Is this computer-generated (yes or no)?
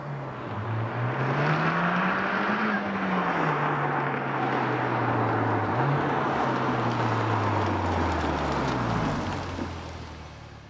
no